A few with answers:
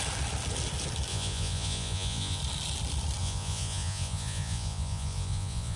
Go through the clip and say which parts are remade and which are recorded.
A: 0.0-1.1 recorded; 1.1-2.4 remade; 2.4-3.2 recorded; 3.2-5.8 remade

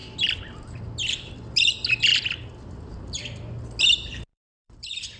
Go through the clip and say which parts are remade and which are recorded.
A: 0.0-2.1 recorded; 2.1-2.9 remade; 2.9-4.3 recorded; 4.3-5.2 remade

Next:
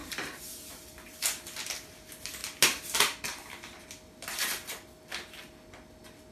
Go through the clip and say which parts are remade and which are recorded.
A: 0.0-0.9 remade; 0.9-6.3 recorded